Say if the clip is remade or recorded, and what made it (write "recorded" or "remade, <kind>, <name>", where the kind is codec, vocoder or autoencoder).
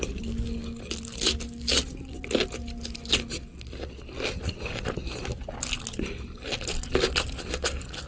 recorded